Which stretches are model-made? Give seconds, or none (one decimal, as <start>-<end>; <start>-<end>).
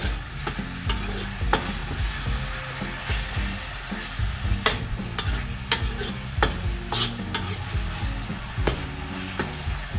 8.3-8.9